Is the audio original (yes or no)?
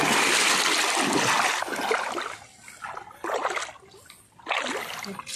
yes